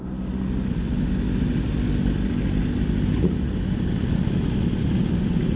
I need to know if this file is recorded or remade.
recorded